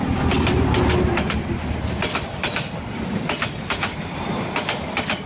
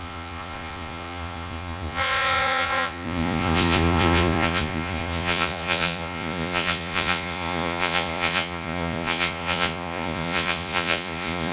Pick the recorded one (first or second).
first